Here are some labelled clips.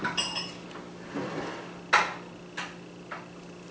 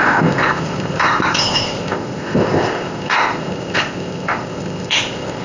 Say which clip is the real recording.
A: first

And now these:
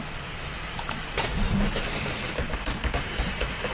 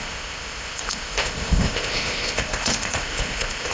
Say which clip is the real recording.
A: first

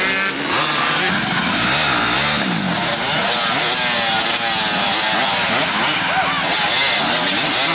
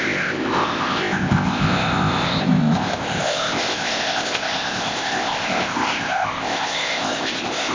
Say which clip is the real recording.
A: first